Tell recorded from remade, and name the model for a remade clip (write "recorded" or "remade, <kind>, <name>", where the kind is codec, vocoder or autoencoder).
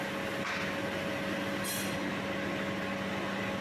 recorded